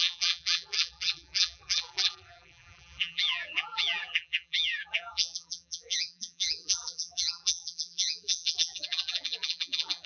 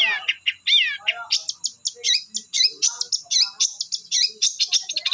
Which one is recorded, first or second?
second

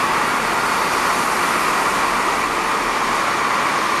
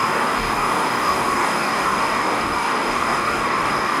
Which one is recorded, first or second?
first